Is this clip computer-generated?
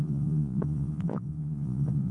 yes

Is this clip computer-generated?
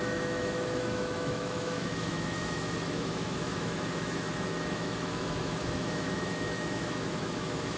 yes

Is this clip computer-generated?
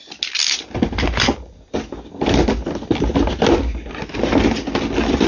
no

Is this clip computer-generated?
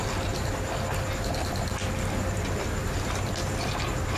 no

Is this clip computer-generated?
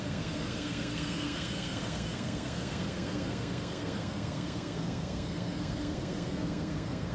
yes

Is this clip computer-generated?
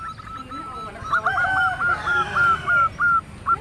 no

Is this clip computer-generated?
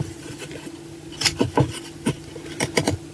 no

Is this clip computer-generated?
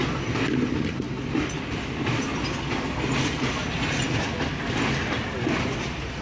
no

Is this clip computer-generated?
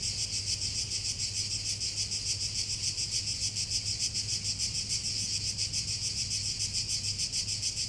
no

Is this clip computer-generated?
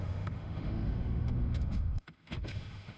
yes